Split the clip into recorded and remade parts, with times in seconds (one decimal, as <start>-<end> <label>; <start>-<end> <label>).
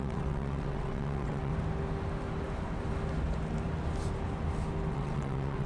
0.0-1.5 remade; 1.5-4.9 recorded; 4.9-5.7 remade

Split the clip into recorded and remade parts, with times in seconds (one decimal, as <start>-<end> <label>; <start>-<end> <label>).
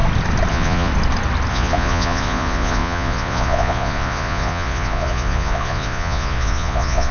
0.0-0.5 recorded; 0.5-0.9 remade; 0.9-1.5 recorded; 1.5-7.1 remade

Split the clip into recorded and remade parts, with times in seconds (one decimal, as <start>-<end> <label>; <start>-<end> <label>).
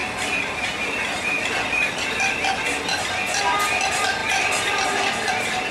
0.0-5.7 recorded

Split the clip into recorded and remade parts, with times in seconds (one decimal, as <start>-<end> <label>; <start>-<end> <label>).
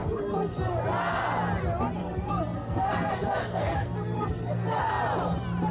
0.0-0.8 remade; 0.8-2.0 recorded; 2.0-4.9 remade; 4.9-5.7 recorded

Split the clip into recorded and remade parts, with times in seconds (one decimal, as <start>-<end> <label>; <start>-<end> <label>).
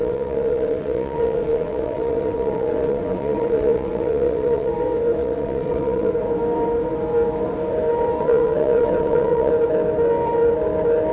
0.0-4.7 remade; 4.7-5.2 recorded; 5.2-6.1 remade; 6.1-8.2 recorded; 8.2-9.5 remade; 9.5-11.1 recorded